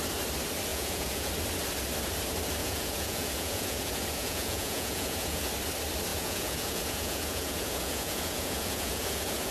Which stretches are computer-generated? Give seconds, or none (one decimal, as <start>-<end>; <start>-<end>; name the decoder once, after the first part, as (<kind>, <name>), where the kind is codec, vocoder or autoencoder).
0.7-1.3 (vocoder, Vocos); 2.6-5.5; 6.1-9.5

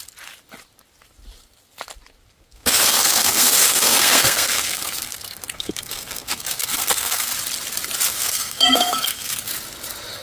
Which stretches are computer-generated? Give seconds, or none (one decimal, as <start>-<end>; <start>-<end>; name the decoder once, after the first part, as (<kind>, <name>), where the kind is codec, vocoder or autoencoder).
2.3-7.3 (codec, SNAC); 8.1-9.5

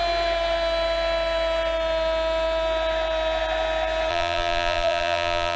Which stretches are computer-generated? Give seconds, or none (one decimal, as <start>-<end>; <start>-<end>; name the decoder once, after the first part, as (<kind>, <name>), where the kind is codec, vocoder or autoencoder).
4.1-5.6 (vocoder, BigVGAN v2)

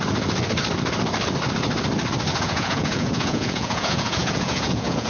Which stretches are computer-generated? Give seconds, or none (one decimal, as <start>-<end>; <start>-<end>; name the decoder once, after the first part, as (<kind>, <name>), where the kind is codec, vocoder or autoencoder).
2.3-5.1 (vocoder, Vocos)

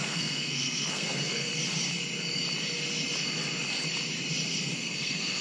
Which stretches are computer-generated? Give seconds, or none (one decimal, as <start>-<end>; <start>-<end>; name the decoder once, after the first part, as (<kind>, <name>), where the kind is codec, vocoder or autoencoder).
0.0-1.5 (codec, SNAC); 4.7-5.4

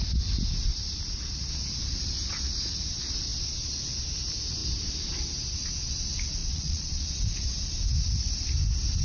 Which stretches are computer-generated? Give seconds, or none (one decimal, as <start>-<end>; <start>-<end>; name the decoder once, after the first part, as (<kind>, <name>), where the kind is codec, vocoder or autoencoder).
6.4-7.1 (vocoder, Vocos)